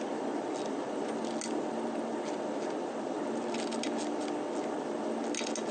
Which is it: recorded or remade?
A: recorded